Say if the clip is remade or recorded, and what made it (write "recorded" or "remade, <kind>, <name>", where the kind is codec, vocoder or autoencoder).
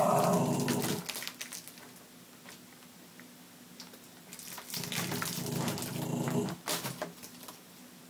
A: recorded